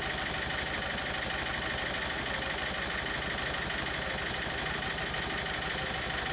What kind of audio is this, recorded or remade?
recorded